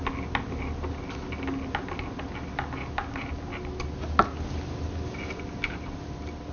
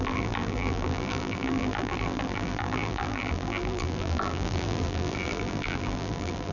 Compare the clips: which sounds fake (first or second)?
second